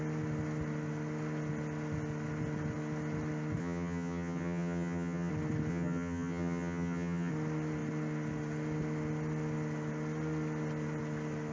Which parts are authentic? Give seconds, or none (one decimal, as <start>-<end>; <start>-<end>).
0.0-3.6; 5.3-5.7; 7.3-11.5